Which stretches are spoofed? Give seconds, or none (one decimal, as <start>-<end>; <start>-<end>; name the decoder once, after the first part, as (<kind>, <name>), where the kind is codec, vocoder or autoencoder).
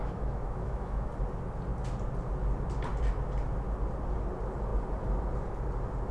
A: 0.0-1.1 (autoencoder, DAC-VAE)